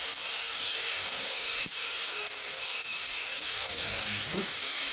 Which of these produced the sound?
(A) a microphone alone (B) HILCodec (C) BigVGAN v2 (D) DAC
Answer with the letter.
D